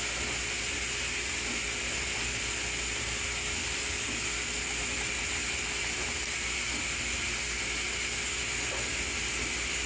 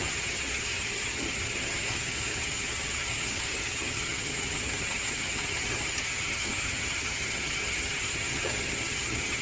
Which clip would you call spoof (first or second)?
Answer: second